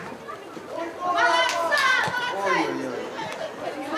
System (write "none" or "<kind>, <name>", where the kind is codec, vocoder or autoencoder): none